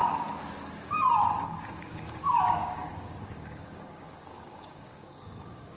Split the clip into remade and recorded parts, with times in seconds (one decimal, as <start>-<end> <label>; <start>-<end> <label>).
0.0-1.4 recorded; 1.4-5.8 remade